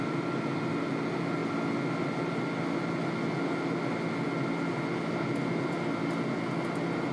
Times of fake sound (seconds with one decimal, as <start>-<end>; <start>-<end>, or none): none